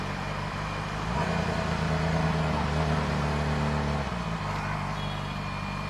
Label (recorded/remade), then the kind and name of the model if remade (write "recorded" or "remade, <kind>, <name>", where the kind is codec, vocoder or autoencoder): recorded